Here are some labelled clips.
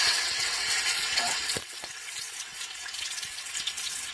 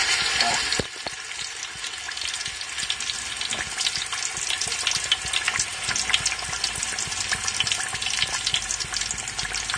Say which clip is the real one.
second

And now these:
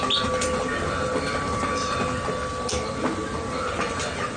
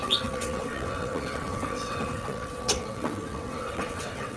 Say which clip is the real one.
first